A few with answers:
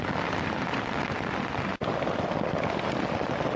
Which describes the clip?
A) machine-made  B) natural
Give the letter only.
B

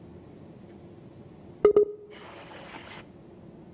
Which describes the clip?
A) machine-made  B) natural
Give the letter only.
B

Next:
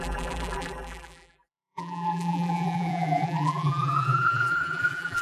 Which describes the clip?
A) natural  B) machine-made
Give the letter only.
B